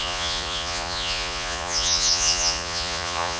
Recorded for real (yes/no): no